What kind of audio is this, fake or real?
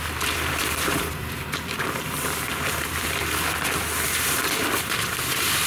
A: fake